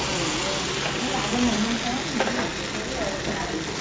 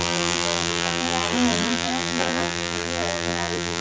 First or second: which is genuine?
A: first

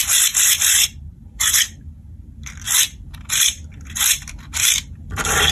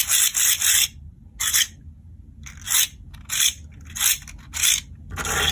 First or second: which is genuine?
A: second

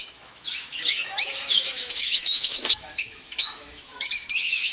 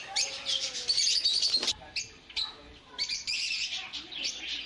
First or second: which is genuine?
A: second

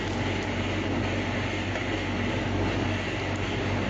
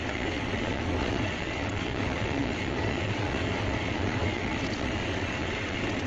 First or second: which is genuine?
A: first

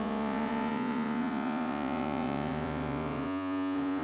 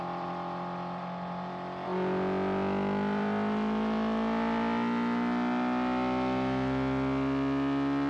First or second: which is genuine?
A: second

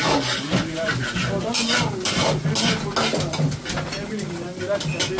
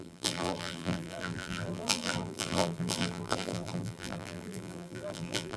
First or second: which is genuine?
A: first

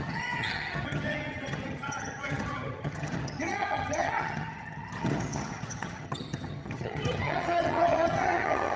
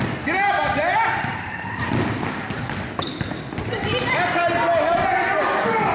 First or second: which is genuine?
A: second